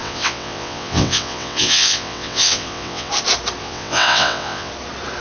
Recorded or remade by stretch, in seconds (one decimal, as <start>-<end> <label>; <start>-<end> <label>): 0.0-3.1 remade; 3.1-3.6 recorded; 3.6-4.7 remade; 4.7-5.2 recorded